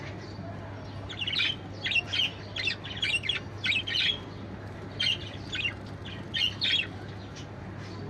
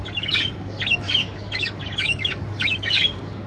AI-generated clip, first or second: second